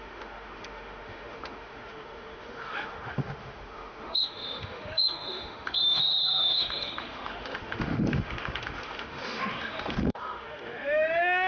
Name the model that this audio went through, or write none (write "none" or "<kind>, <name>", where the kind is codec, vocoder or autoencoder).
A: autoencoder, DAC-VAE